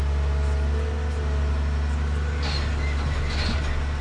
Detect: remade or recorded recorded